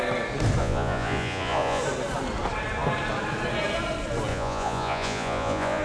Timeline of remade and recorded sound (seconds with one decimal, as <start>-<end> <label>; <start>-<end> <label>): 0.0-0.6 recorded; 0.6-1.8 remade; 1.8-4.3 recorded; 4.3-5.8 remade

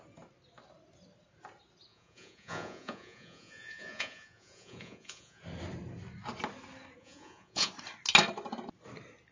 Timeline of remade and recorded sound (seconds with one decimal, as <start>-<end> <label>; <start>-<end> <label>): 0.0-1.9 recorded; 1.9-5.4 remade; 5.4-7.0 recorded; 7.0-7.7 remade; 7.7-9.3 recorded

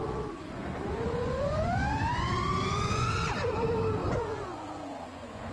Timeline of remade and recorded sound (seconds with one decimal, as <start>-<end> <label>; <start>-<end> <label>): 0.0-3.1 remade; 3.1-4.0 recorded; 4.0-5.5 remade

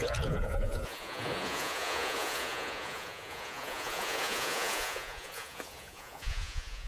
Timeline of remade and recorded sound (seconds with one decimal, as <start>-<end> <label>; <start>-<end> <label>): 0.0-6.9 remade